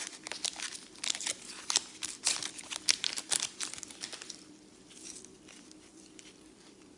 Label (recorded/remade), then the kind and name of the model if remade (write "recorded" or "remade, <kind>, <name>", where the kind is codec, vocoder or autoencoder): remade, vocoder, BigVGAN v2